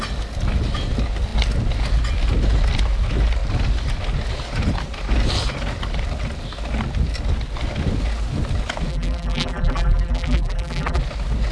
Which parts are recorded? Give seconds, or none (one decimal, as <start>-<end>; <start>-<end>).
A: 0.0-8.9; 11.0-11.5